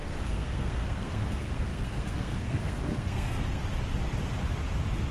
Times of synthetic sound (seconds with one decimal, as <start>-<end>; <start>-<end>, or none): 0.0-3.6